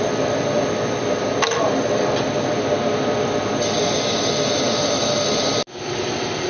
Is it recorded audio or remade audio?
recorded